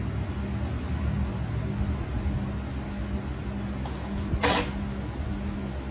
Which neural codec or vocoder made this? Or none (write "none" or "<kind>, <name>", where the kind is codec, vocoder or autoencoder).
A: none